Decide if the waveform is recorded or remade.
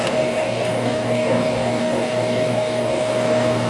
remade